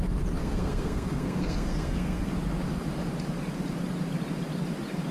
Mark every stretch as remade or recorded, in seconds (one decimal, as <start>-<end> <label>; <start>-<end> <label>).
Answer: 0.0-0.4 recorded; 0.4-2.3 remade; 2.3-5.1 recorded